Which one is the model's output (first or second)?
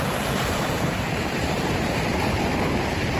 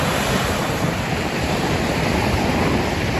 first